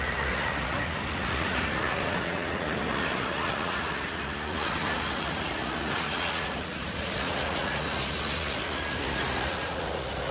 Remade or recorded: remade